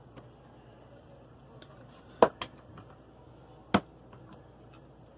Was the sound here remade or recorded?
recorded